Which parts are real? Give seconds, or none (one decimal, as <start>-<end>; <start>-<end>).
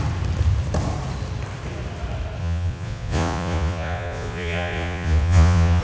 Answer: 0.0-2.4